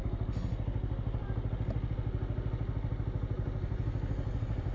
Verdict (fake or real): real